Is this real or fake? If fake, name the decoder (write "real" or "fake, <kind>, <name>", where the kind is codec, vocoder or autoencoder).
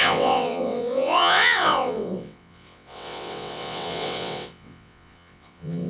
fake, vocoder, WaveNeXt